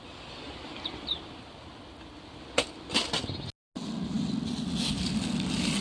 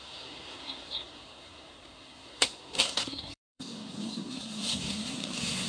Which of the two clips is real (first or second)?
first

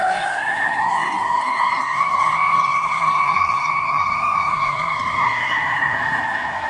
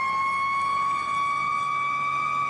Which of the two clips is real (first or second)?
second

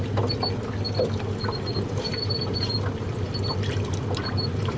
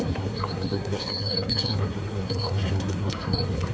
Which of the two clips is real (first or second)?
first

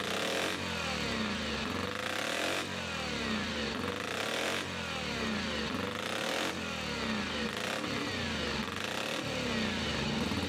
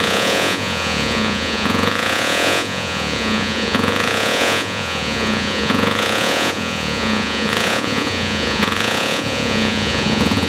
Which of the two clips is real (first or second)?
first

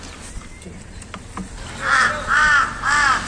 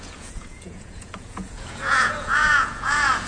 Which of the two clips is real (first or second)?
first